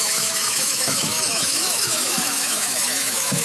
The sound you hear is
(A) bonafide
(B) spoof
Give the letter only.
B